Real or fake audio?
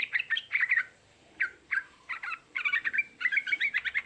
fake